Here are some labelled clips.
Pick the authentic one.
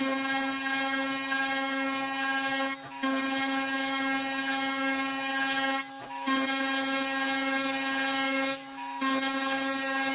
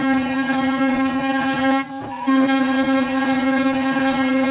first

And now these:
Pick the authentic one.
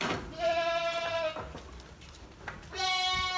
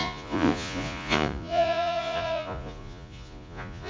first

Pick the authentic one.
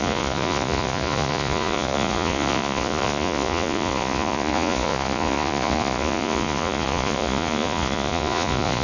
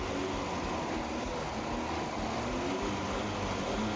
second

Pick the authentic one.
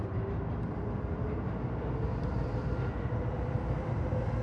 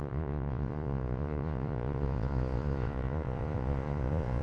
first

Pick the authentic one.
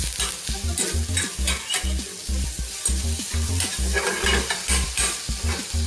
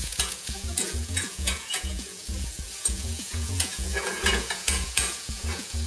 first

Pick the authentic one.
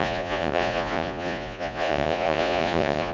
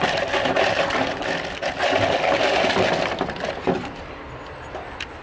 second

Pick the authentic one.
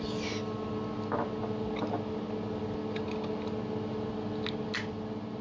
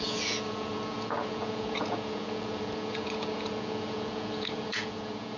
first